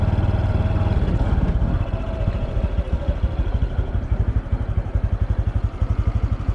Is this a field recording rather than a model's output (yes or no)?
yes